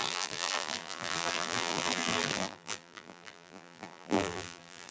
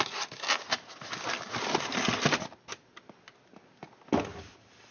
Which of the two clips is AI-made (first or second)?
first